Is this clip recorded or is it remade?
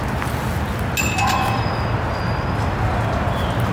recorded